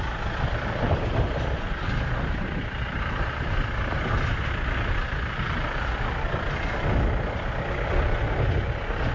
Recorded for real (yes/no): no